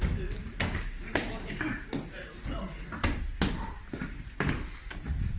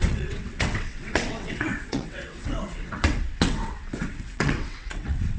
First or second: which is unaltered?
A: first